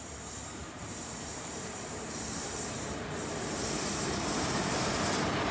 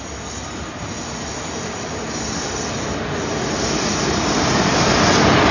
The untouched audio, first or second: second